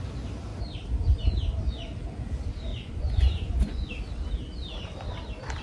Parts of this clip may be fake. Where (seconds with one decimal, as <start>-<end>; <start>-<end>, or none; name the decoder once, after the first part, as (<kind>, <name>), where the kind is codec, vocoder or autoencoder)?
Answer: 2.7-3.9 (vocoder, Vocos)